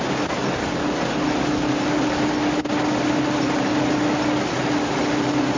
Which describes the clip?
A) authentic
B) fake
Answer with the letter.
A